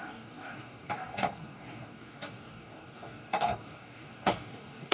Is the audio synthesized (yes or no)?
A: yes